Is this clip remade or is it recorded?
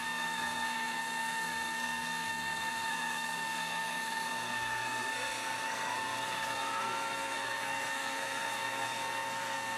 remade